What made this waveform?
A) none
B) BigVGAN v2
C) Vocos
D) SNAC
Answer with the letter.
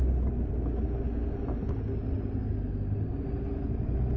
A